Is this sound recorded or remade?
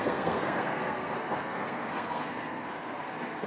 remade